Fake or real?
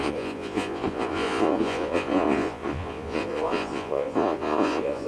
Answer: fake